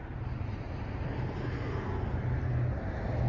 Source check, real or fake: real